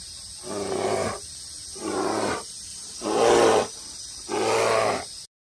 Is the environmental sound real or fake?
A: real